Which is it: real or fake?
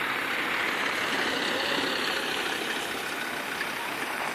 real